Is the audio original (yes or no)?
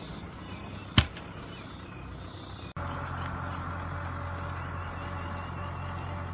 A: yes